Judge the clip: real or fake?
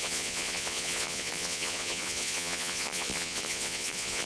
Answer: fake